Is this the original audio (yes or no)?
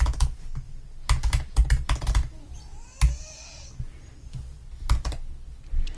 yes